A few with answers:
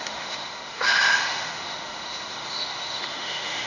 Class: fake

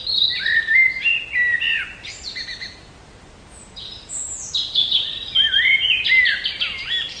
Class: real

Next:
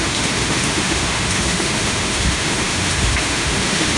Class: fake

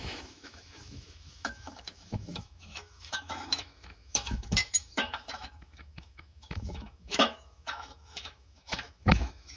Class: fake